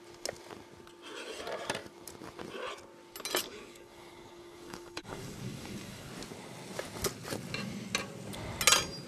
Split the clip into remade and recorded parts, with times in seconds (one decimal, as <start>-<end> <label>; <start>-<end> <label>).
0.0-3.4 recorded; 3.4-6.1 remade; 6.1-9.1 recorded